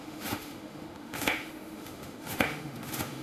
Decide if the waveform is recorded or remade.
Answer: remade